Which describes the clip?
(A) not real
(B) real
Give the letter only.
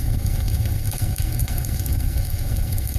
A